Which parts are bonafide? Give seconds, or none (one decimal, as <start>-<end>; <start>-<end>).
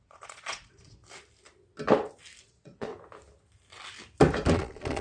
1.0-2.4; 2.9-4.5